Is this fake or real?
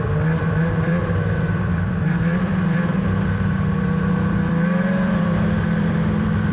fake